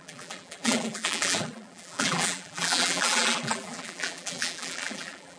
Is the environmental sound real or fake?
fake